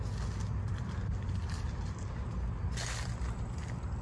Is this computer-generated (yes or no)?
no